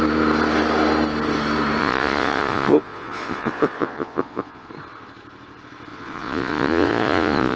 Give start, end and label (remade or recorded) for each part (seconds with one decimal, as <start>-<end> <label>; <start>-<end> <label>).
0.0-1.8 recorded; 1.8-4.7 remade; 4.7-5.9 recorded; 5.9-7.6 remade